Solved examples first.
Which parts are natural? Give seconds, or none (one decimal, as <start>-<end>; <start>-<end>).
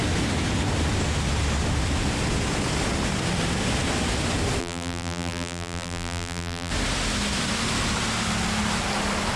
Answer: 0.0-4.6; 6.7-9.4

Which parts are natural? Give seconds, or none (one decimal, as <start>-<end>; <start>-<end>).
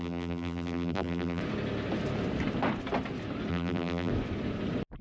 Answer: 1.4-3.5; 4.1-5.0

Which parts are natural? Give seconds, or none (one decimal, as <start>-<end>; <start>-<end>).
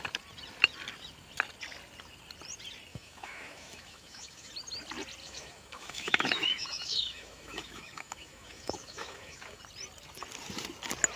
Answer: 0.0-2.9; 4.5-5.2; 9.6-11.2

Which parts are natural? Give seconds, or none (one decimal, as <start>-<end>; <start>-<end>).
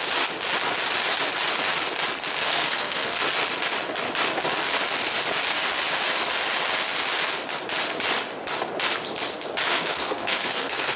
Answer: 0.0-2.4; 3.2-9.7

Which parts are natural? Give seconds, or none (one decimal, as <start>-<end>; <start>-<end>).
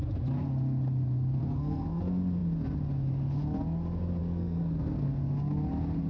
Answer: 0.0-1.4; 2.0-4.2; 5.1-6.1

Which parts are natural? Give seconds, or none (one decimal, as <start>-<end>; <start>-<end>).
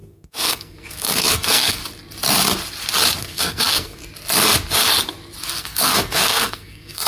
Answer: 1.8-3.2; 4.0-5.5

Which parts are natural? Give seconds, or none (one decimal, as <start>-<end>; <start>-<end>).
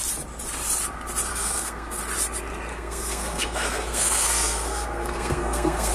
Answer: 0.0-1.3; 2.0-2.7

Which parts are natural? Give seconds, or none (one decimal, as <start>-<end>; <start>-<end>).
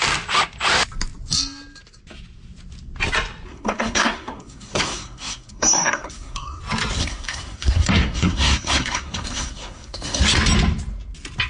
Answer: 0.0-3.5; 6.6-7.0; 10.2-11.5